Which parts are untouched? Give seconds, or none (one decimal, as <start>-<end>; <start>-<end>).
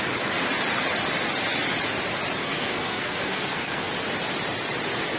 0.0-2.4; 3.9-5.2